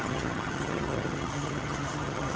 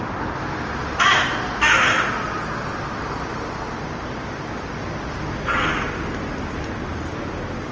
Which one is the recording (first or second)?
second